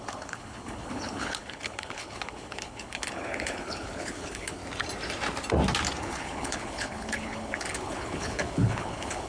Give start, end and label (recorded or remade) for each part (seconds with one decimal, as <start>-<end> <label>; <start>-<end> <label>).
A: 0.0-4.6 remade; 4.6-6.0 recorded; 6.0-9.3 remade